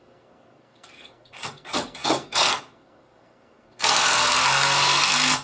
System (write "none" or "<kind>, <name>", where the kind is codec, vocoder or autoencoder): codec, SNAC